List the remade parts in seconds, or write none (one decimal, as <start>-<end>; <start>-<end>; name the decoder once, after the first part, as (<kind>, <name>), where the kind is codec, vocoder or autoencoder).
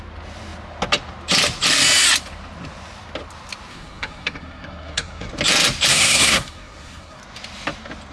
3.7-5.3 (codec, SNAC); 5.9-7.2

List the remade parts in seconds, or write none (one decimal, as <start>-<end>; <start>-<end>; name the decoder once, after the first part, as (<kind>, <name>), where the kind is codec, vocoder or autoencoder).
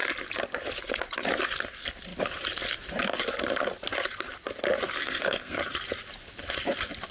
5.0-5.6 (codec, SNAC)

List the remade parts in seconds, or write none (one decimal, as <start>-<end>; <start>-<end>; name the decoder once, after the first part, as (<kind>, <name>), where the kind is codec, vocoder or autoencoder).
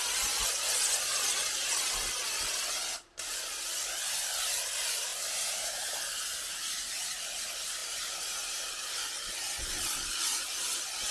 none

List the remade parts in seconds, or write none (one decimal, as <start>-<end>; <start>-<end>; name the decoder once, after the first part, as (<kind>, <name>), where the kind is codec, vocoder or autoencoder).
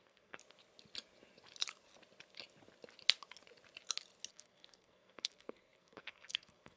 0.0-0.4 (codec, SNAC); 4.3-6.8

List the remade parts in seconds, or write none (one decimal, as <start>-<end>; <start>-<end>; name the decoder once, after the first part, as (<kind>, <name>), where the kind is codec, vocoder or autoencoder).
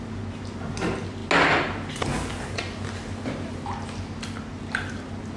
none